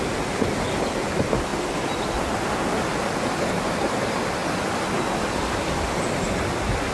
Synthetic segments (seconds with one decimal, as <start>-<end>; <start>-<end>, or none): none